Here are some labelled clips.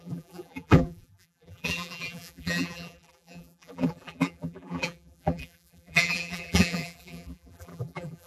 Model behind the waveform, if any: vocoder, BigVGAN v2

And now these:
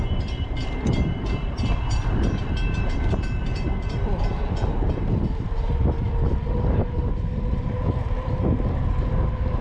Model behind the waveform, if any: vocoder, BigVGAN v2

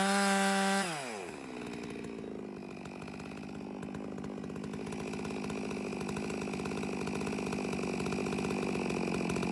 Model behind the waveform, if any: none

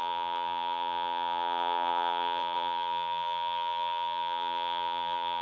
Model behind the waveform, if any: vocoder, BigVGAN v2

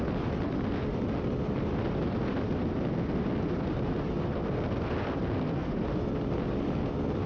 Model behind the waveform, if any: none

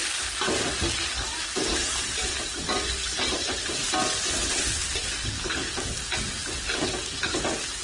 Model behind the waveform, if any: none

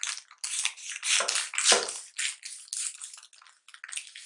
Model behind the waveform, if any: none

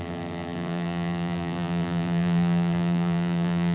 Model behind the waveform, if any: vocoder, BigVGAN v2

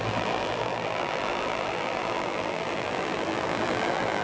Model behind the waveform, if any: vocoder, BigVGAN v2